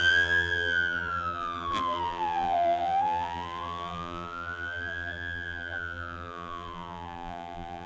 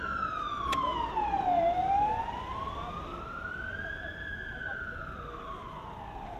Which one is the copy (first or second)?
first